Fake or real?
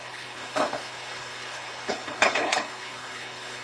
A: fake